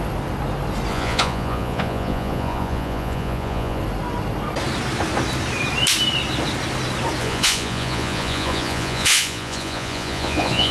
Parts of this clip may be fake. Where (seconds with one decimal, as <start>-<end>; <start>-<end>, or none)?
0.9-3.8; 7.2-10.7